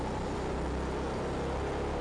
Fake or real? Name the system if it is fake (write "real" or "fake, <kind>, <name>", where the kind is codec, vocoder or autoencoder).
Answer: real